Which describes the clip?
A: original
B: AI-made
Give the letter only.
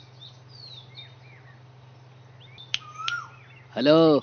A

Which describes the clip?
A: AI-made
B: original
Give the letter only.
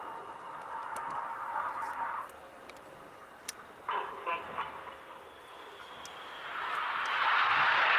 B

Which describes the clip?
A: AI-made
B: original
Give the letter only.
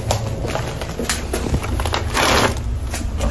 B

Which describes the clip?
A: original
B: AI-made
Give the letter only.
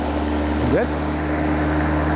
A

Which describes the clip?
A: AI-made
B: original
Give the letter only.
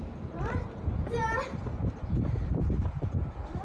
A